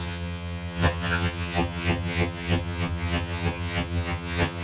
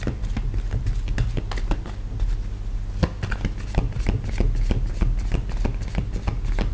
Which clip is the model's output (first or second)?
first